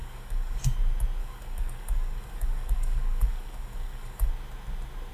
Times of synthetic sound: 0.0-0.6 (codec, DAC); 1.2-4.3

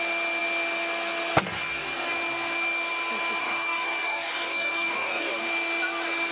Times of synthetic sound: 3.4-5.3 (codec, DAC)

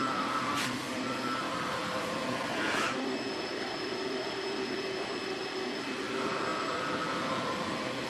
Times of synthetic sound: none

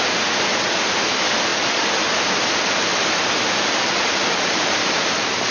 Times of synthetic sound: none

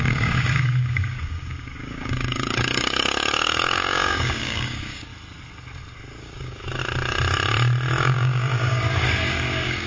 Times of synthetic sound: 0.0-5.1 (codec, DAC); 6.2-6.8; 7.9-9.9

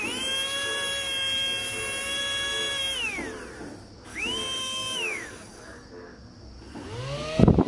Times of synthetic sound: 4.1-5.9 (codec, DAC)

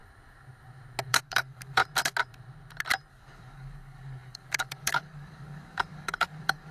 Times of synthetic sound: 1.1-1.8 (codec, DAC); 3.1-6.7